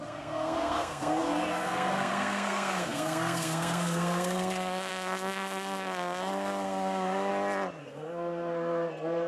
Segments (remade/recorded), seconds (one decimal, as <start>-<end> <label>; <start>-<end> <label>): 0.0-7.3 remade; 7.3-7.8 recorded; 7.8-9.3 remade